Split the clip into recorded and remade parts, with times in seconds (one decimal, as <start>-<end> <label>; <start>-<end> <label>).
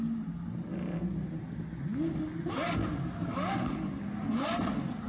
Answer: 0.0-5.1 recorded